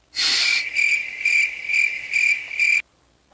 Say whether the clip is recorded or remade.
recorded